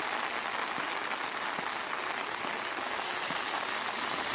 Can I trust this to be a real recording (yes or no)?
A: yes